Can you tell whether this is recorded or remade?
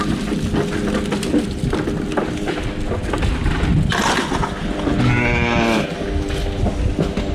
recorded